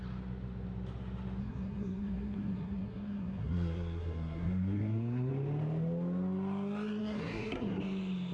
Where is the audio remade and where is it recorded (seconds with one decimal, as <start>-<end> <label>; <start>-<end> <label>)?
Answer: 0.0-1.4 recorded; 1.4-5.3 remade; 5.3-7.0 recorded; 7.0-7.8 remade; 7.8-8.3 recorded